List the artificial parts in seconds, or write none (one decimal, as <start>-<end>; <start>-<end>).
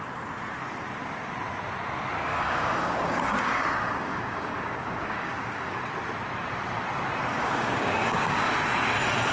2.3-5.8; 7.3-8.5